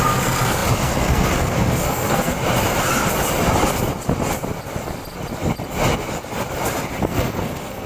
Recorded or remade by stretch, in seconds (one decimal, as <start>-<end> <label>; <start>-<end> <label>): 0.0-2.3 remade; 2.3-7.0 recorded; 7.0-7.9 remade